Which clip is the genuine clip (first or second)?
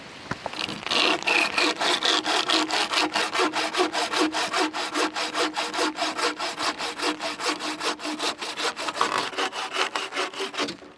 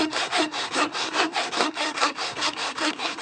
first